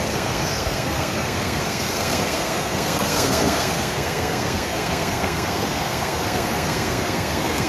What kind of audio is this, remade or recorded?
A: remade